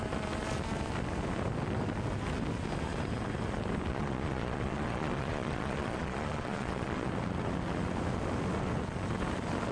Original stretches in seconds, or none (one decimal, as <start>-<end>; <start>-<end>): 0.0-3.9; 7.1-9.7